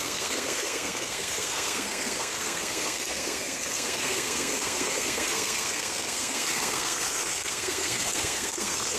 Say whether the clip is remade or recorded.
remade